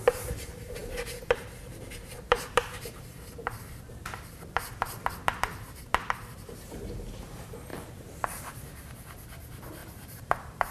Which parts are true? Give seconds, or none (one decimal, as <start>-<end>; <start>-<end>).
5.8-6.3